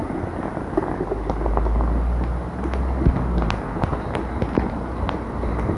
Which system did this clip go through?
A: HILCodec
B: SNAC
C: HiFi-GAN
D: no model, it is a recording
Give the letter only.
D